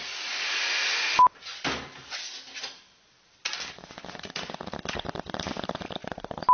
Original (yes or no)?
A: yes